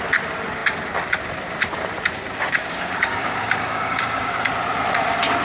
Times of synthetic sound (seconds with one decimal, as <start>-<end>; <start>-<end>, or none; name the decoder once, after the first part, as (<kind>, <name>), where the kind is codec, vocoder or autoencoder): 2.6-4.5 (codec, DAC)